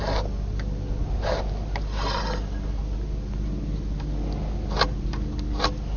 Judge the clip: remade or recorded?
recorded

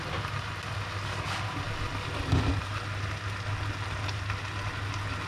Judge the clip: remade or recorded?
recorded